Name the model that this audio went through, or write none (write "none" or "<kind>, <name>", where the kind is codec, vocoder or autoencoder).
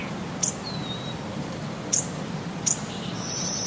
vocoder, BigVGAN v2